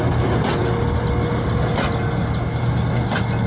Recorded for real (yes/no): yes